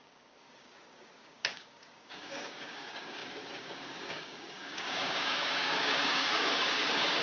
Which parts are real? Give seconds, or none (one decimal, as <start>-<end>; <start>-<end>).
none